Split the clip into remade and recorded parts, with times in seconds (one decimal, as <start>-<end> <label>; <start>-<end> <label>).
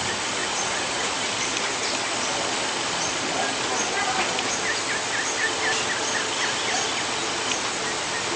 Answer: 0.0-0.4 recorded; 0.4-1.1 remade; 1.1-8.4 recorded